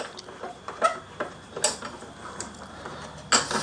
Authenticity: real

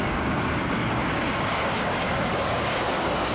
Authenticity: fake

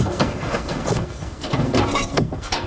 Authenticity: fake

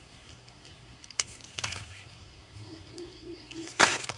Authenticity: fake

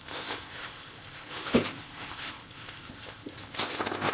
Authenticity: fake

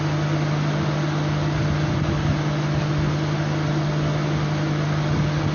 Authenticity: real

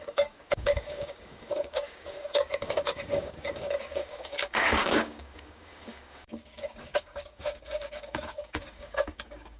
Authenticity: fake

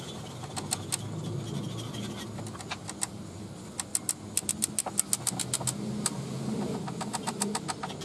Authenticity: real